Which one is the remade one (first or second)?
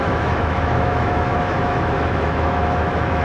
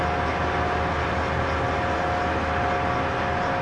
first